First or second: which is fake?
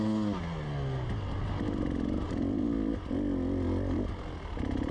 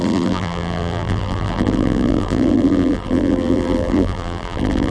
second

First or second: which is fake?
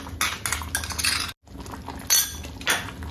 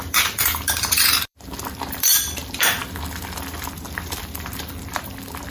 second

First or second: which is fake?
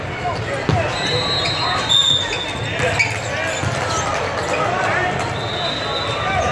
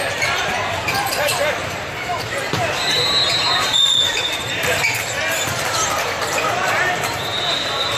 second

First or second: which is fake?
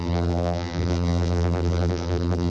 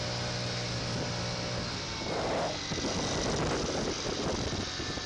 first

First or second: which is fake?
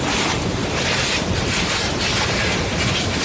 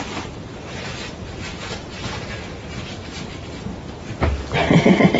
first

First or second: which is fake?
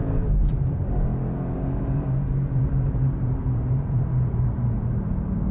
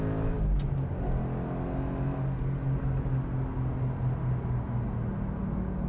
first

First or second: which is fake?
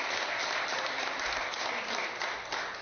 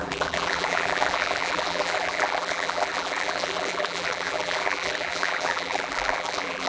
second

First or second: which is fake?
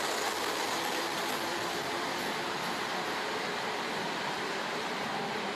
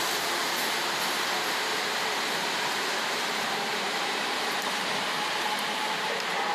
second